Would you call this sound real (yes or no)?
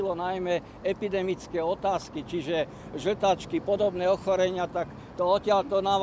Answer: yes